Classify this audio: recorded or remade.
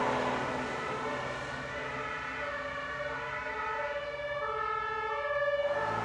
recorded